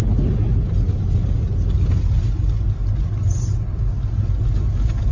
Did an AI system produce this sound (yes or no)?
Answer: no